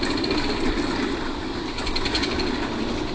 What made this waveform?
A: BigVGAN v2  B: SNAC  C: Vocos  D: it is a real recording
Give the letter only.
D